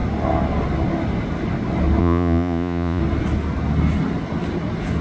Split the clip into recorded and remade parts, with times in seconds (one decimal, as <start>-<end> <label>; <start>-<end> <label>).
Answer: 0.0-2.0 recorded; 2.0-3.0 remade; 3.0-5.0 recorded